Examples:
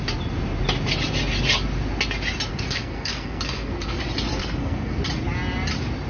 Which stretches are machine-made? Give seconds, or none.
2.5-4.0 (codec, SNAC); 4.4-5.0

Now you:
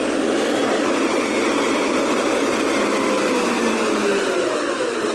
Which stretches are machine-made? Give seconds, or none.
none

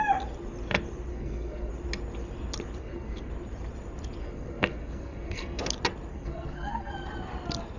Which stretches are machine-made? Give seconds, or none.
1.1-1.7 (codec, SNAC); 2.8-3.3; 4.2-5.6; 6.1-6.9

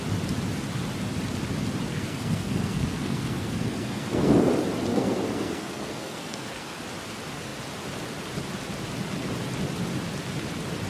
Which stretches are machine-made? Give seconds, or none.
1.9-4.5 (codec, SNAC); 4.9-6.8

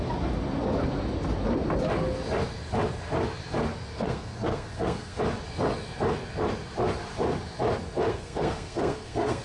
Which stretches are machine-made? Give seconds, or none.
3.9-5.2 (codec, SNAC); 8.1-9.4